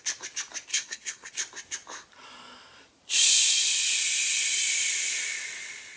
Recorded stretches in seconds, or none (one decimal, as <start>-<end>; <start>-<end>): 0.0-0.7; 1.3-6.0